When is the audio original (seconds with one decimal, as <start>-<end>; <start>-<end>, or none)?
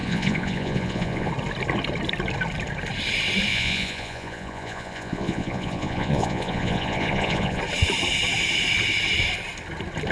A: 1.3-3.5; 7.6-10.1